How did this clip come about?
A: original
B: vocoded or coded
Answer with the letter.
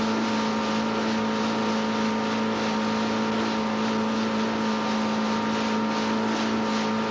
A